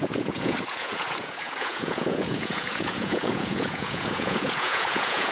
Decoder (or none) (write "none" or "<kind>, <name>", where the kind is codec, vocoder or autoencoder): vocoder, Vocos